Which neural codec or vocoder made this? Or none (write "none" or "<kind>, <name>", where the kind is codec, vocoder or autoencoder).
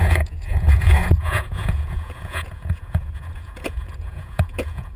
vocoder, Vocos